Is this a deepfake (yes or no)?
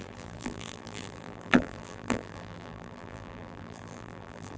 yes